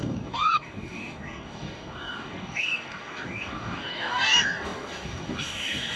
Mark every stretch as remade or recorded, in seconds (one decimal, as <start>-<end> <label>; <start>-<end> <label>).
0.0-6.0 remade